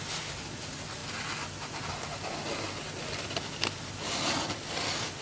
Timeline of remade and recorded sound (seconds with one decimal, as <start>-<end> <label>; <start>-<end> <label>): 0.0-5.2 recorded

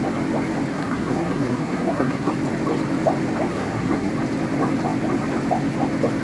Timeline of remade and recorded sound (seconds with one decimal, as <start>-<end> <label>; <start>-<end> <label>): 0.0-0.7 recorded; 0.7-2.3 remade; 2.3-3.5 recorded; 3.5-4.1 remade; 4.1-6.2 recorded

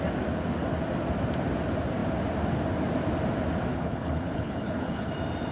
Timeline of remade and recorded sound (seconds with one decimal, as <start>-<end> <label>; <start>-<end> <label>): 0.0-3.7 recorded; 3.7-5.1 remade; 5.1-5.5 recorded

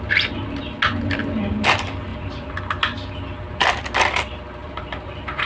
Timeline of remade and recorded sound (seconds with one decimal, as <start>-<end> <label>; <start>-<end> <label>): 0.0-5.5 recorded

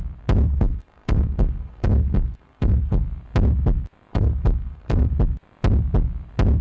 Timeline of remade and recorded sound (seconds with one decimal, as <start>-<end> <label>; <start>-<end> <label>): 0.0-0.5 recorded; 0.5-3.0 remade; 3.0-4.1 recorded; 4.1-5.1 remade; 5.1-6.6 recorded

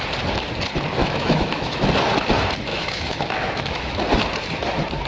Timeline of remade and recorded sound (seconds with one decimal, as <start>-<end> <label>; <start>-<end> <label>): 0.0-1.0 recorded; 1.0-1.9 remade; 1.9-2.7 recorded; 2.7-4.0 remade; 4.0-5.1 recorded

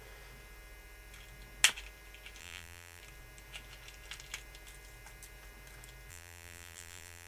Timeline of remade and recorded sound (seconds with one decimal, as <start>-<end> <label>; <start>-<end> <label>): 0.0-2.4 recorded; 2.4-3.0 remade; 3.0-6.1 recorded; 6.1-7.3 remade